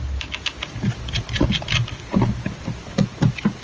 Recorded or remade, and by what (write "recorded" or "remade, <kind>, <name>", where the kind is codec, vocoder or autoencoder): recorded